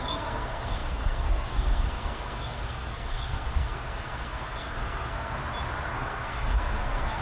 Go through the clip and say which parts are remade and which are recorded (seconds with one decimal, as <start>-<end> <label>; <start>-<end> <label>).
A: 0.0-5.4 remade; 5.4-5.9 recorded; 5.9-7.2 remade